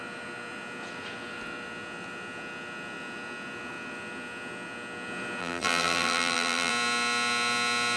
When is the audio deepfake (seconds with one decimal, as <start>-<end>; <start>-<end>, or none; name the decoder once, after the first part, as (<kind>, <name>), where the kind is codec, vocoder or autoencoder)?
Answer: 5.4-6.7 (vocoder, BigVGAN v2)